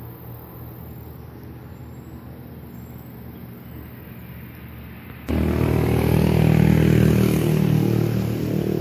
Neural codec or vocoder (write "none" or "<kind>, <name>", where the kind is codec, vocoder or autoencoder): none